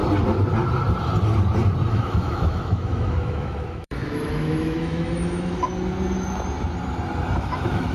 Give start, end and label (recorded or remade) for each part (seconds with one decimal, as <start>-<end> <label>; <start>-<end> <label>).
0.0-1.9 recorded; 1.9-5.7 remade; 5.7-7.4 recorded; 7.4-7.9 remade